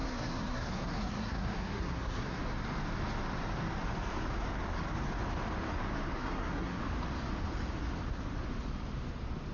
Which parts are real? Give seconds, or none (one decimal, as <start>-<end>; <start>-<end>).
2.4-6.2; 6.8-9.5